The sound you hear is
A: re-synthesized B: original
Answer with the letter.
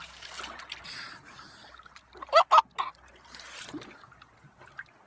B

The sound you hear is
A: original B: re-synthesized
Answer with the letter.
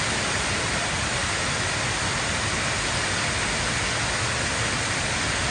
A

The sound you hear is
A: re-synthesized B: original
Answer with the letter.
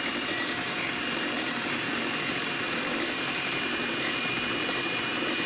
A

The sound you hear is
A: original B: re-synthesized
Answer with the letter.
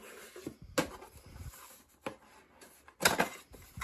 A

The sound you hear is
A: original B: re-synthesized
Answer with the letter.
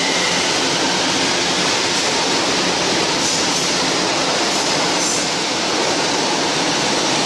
B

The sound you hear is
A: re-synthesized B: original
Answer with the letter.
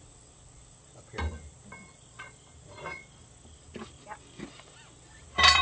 B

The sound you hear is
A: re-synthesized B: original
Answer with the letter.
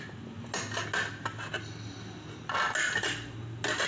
B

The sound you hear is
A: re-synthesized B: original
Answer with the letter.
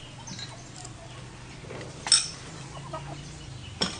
B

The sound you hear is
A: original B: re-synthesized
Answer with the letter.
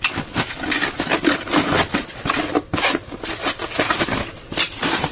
A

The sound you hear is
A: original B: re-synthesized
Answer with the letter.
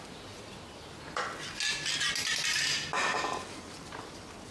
A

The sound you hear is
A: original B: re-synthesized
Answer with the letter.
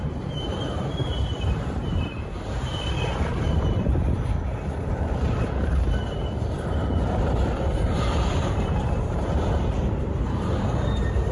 B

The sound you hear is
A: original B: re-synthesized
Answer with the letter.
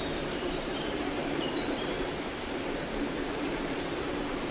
B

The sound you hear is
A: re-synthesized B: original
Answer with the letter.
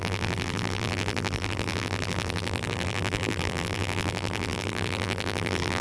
A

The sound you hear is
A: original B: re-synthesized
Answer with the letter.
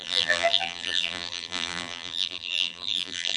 B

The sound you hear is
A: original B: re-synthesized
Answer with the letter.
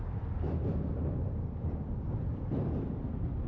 B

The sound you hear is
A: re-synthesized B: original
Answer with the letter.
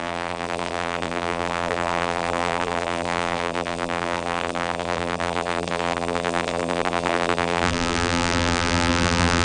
A